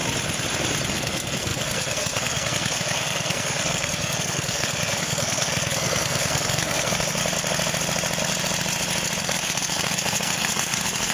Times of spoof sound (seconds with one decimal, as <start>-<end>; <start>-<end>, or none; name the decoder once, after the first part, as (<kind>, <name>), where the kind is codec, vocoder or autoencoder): 0.9-7.2 (codec, SNAC); 9.2-11.1